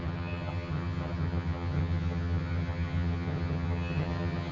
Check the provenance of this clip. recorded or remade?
remade